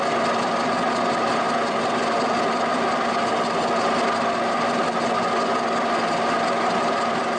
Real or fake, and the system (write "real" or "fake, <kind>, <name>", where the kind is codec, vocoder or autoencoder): real